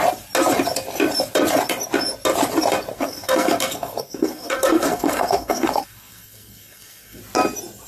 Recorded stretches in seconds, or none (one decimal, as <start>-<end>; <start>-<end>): 0.0-2.9; 7.2-7.9